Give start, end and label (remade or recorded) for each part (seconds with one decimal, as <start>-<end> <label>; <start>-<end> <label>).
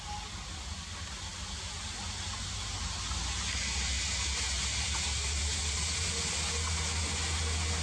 0.0-7.8 recorded